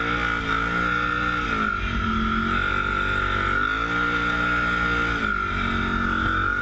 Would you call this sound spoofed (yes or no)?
no